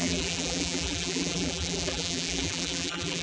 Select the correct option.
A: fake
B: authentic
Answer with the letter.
A